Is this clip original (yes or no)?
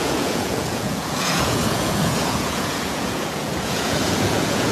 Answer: no